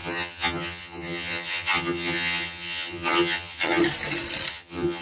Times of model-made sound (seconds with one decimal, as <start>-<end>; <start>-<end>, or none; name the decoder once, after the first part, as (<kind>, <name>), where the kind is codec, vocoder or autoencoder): 0.0-3.8 (vocoder, HiFi-GAN); 4.5-5.0

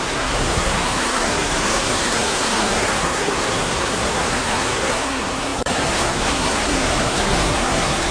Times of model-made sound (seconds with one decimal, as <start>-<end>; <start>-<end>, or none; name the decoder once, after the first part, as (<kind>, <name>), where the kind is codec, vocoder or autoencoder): 0.0-8.1 (codec, SNAC)

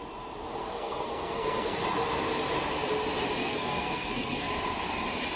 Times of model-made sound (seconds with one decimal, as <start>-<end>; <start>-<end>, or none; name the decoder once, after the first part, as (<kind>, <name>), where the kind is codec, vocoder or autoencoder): 0.6-1.8 (codec, SNAC); 3.4-4.5